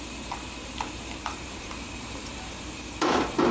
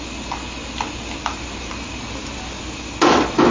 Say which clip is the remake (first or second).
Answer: first